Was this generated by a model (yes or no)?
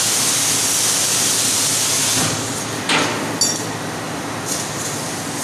no